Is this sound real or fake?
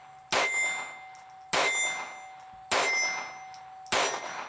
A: real